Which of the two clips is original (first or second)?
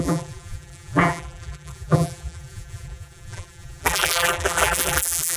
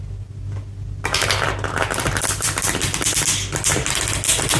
second